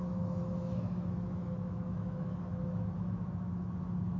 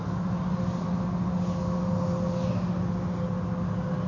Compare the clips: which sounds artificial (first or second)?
first